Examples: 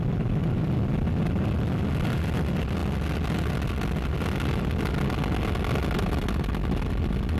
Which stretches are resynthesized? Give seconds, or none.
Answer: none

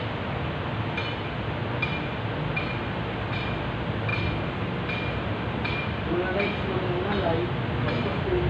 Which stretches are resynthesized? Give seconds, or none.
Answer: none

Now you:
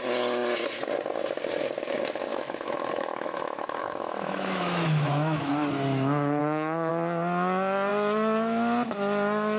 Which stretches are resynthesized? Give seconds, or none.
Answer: 2.3-5.5 (autoencoder, DAC-VAE); 6.4-6.9